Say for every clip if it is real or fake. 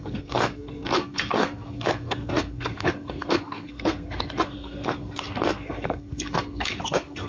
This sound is fake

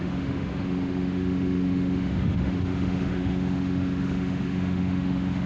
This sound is fake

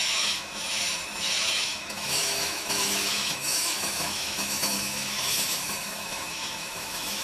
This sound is fake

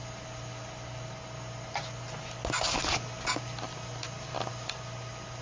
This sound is real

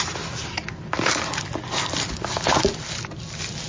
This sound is real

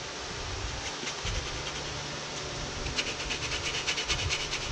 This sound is real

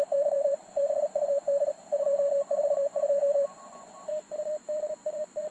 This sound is fake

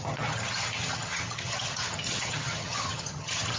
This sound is fake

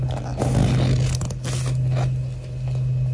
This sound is real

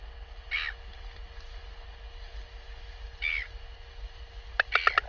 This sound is real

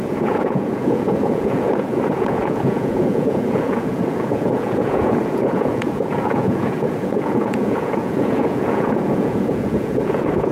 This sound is fake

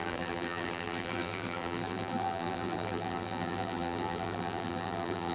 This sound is fake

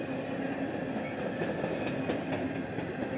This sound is real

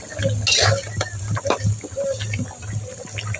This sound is real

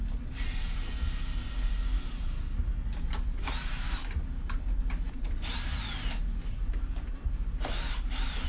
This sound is real